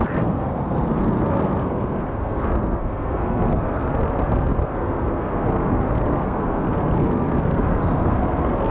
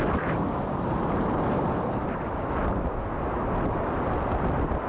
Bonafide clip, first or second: second